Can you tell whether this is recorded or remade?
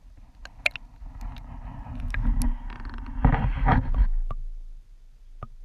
recorded